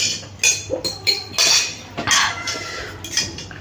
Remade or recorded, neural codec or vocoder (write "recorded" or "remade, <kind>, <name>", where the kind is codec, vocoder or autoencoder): recorded